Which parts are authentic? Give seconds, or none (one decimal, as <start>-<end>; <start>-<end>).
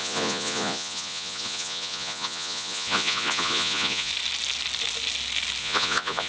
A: 4.1-5.6